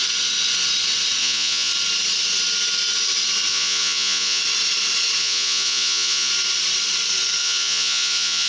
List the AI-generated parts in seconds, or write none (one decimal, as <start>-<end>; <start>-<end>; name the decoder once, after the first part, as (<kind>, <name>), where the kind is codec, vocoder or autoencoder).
1.2-1.7 (vocoder, Vocos); 3.5-4.4; 5.2-6.3; 7.4-8.5